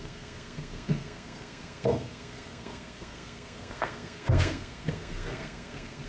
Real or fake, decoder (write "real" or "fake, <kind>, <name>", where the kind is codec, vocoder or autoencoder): fake, codec, SNAC